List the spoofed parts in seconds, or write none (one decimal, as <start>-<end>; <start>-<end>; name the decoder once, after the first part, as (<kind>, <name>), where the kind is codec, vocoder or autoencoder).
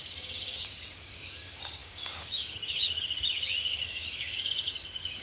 0.0-5.2 (codec, DAC)